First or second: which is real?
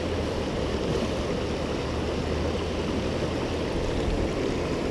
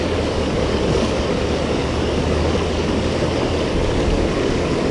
first